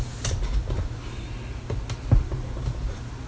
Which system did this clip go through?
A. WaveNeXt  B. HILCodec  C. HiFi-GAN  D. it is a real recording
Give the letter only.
D